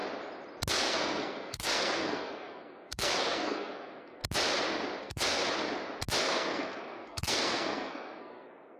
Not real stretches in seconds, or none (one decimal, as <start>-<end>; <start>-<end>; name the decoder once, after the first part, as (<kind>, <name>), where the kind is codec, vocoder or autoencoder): 0.7-4.2 (codec, SNAC); 5.0-5.4; 6.2-8.8